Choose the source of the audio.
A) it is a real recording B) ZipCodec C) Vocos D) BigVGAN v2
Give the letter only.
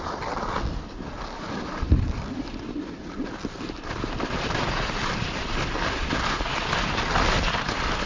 A